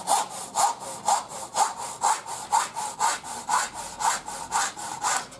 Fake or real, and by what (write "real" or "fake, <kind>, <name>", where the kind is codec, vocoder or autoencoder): real